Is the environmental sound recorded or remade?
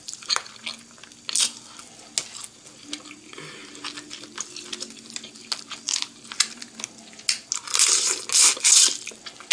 recorded